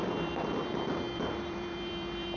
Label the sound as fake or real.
fake